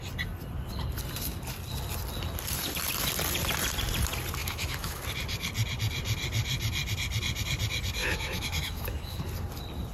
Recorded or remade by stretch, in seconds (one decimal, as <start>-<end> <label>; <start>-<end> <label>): 0.0-4.4 recorded; 4.4-5.0 remade; 5.0-8.0 recorded; 8.0-9.2 remade; 9.2-9.9 recorded